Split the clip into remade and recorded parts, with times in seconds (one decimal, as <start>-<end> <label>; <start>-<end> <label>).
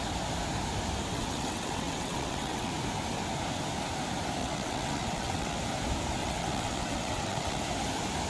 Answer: 0.0-1.1 recorded; 1.1-2.7 remade; 2.7-4.4 recorded; 4.4-5.6 remade; 5.6-6.2 recorded; 6.2-7.6 remade; 7.6-8.3 recorded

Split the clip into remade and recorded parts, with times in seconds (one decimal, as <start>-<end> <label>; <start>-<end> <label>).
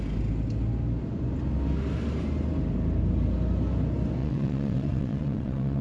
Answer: 0.0-4.2 recorded; 4.2-5.8 remade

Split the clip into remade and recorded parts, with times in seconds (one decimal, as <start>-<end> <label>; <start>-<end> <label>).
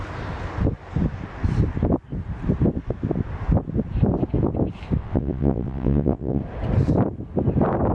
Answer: 0.0-5.0 recorded; 5.0-6.4 remade; 6.4-7.9 recorded